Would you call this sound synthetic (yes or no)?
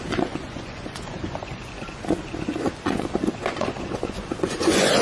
yes